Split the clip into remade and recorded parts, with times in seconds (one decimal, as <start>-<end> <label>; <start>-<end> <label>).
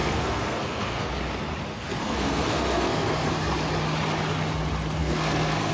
0.0-1.1 remade; 1.1-1.7 recorded; 1.7-3.3 remade; 3.3-5.0 recorded; 5.0-5.7 remade